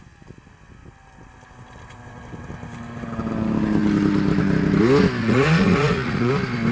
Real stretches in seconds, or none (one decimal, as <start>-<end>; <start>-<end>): 0.0-5.2; 6.3-6.7